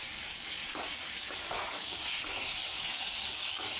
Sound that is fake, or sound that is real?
fake